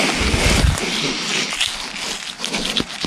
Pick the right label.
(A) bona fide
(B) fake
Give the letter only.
A